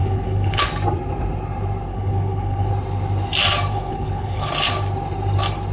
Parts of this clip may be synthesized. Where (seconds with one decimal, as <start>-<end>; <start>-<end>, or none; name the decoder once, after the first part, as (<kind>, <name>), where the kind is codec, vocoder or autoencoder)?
0.0-0.6 (codec, HILCodec); 1.9-2.7; 3.7-4.5